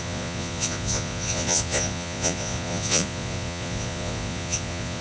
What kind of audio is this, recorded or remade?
remade